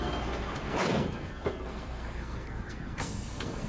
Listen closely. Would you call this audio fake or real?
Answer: fake